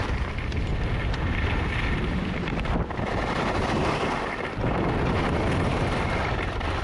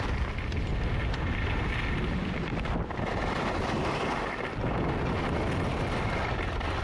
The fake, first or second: first